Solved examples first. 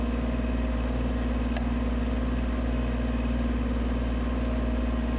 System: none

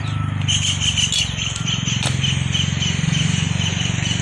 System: none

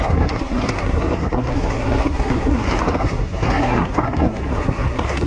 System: codec, SNAC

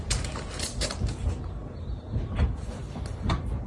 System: vocoder, BigVGAN v2